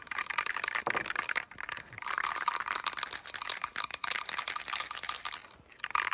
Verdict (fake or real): real